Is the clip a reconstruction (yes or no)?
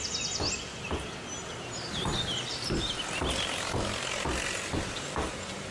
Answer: no